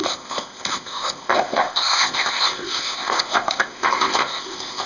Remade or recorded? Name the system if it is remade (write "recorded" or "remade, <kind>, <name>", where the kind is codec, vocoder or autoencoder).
remade, codec, ZipCodec